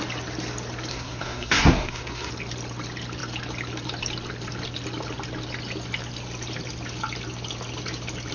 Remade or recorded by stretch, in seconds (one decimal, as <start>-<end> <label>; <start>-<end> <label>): 0.0-0.9 recorded; 0.9-2.3 remade; 2.3-8.3 recorded